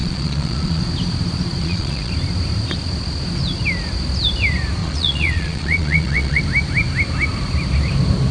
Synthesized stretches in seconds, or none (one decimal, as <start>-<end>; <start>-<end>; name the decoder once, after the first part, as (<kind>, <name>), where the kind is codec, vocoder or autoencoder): 0.0-0.8 (vocoder, Vocos); 1.6-2.1; 4.8-6.4